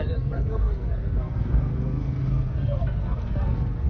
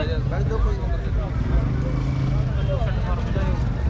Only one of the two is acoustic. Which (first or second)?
second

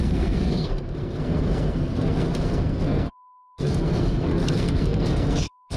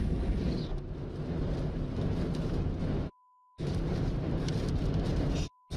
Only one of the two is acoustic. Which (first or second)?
second